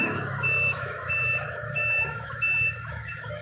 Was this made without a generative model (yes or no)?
no